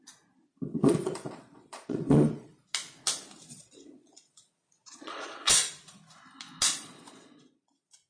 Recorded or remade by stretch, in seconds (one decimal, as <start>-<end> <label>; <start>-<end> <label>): 0.0-0.7 recorded; 0.7-2.5 remade; 2.5-3.5 recorded; 3.5-5.5 remade; 5.5-6.7 recorded; 6.7-8.1 remade